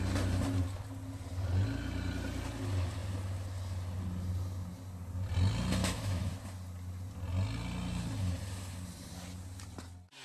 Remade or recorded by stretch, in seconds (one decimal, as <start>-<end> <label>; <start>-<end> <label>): 0.0-5.8 recorded; 5.8-6.3 remade; 6.3-10.2 recorded

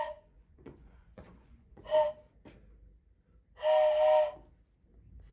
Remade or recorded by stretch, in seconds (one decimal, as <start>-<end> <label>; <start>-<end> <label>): 0.0-1.9 remade; 1.9-5.3 recorded

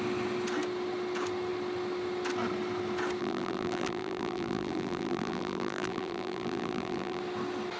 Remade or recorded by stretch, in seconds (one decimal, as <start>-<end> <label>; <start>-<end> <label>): 0.0-3.2 recorded; 3.2-7.2 remade; 7.2-7.8 recorded

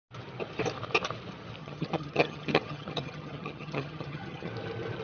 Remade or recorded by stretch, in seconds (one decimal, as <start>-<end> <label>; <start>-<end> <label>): 0.0-1.6 recorded; 1.6-4.5 remade; 4.5-5.0 recorded